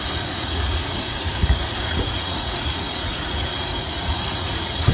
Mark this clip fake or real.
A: fake